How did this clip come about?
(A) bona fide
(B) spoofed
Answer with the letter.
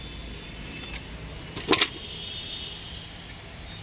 A